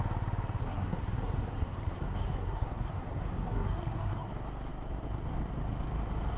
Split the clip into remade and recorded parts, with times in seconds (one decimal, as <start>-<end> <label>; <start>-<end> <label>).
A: 0.0-0.6 recorded; 0.6-4.3 remade; 4.3-6.4 recorded